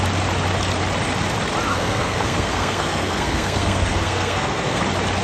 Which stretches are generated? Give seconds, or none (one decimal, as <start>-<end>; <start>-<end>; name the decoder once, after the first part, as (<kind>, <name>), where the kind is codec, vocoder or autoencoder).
1.7-4.8 (codec, SNAC)

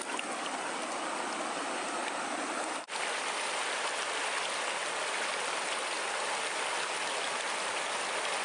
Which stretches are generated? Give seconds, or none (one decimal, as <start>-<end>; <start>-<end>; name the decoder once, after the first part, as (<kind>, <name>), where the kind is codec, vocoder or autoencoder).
2.0-3.0 (vocoder, BigVGAN v2)

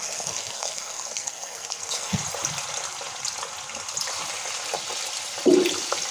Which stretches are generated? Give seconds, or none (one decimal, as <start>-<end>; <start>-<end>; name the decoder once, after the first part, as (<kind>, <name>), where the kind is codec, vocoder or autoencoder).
0.0-2.2 (codec, SNAC)